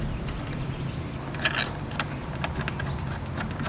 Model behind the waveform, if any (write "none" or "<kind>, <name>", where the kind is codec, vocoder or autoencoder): none